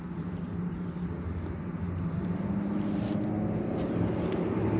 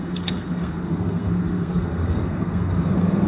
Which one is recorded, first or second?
first